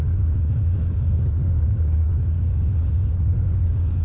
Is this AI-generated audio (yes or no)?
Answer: yes